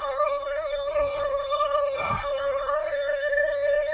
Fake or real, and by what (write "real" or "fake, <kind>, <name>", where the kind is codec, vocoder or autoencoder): fake, codec, SNAC